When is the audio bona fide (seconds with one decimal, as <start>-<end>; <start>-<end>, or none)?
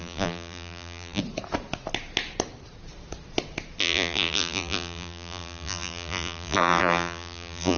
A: 1.2-3.8